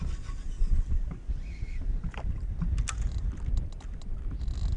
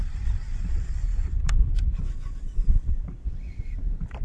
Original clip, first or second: first